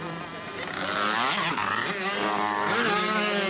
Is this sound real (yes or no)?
yes